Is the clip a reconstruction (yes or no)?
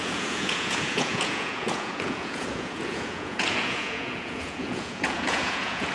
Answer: yes